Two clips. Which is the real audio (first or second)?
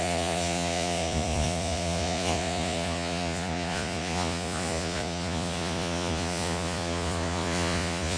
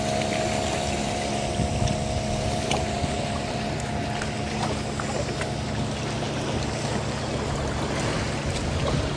second